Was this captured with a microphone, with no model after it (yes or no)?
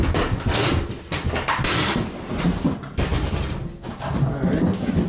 yes